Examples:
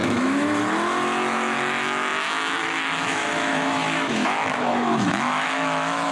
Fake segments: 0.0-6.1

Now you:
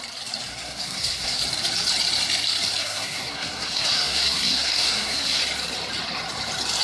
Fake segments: 0.5-1.4; 2.8-5.4

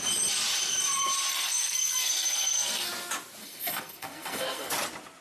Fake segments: 1.3-2.9; 3.4-4.7